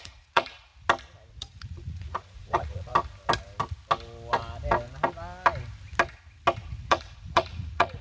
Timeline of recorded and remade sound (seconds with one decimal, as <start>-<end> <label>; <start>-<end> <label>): 0.0-0.7 remade; 0.7-1.3 recorded; 1.3-2.9 remade; 2.9-6.7 recorded; 6.7-8.0 remade